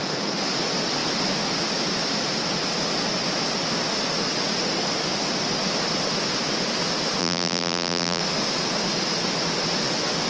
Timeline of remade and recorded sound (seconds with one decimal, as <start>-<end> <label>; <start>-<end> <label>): 0.0-7.2 recorded; 7.2-8.2 remade; 8.2-10.3 recorded

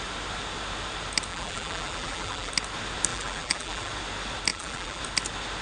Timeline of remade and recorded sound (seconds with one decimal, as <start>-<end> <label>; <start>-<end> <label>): 0.0-1.3 recorded; 1.3-2.5 remade; 2.5-3.1 recorded; 3.1-3.9 remade; 3.9-4.5 recorded; 4.5-5.0 remade; 5.0-5.6 recorded